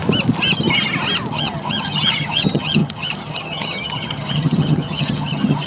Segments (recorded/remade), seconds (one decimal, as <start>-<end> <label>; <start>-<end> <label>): 0.0-1.3 recorded; 1.3-5.7 remade